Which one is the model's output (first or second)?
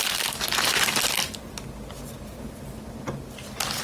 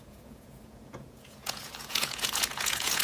second